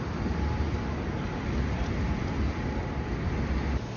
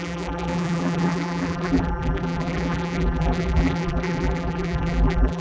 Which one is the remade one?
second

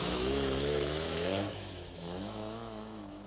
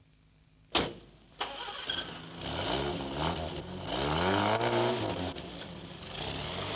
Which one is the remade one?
first